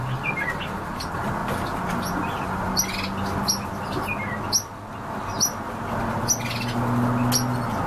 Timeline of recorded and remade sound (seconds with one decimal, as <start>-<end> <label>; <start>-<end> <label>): 0.0-7.9 recorded